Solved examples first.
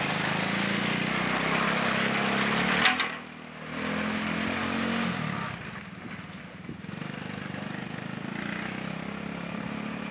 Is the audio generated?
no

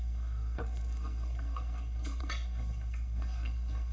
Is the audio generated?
yes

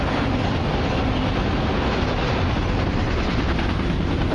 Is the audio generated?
no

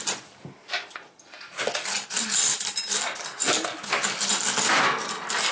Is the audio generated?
no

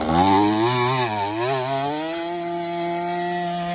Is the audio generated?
no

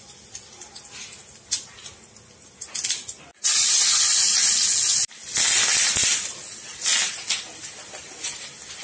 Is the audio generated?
no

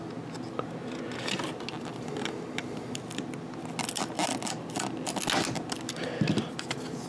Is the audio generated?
no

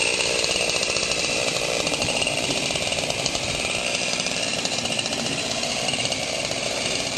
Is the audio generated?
yes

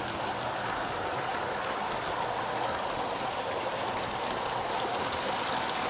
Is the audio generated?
no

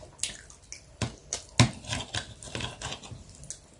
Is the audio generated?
no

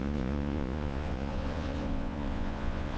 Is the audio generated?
yes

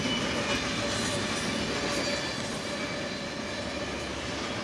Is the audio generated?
no